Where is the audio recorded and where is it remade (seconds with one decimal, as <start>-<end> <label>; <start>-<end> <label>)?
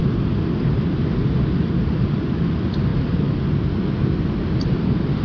0.0-5.2 recorded